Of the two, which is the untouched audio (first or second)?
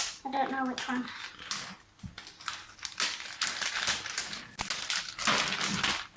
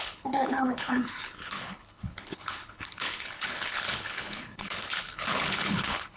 first